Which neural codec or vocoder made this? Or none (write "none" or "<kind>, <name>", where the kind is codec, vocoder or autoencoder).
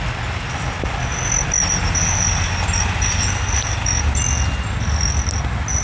none